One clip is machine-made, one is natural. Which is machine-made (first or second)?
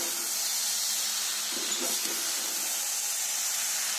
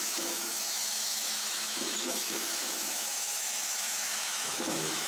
second